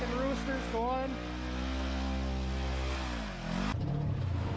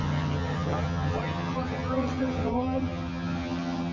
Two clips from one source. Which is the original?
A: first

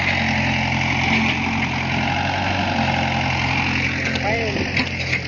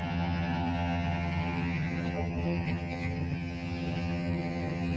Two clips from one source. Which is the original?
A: first